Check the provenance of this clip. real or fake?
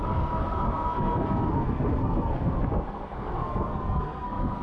fake